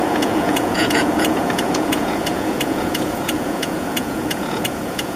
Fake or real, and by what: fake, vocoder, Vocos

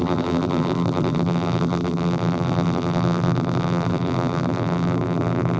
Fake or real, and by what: fake, vocoder, BigVGAN v2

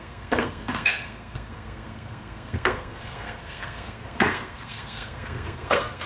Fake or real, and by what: fake, codec, SNAC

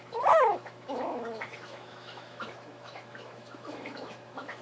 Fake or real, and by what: fake, autoencoder, DAC-VAE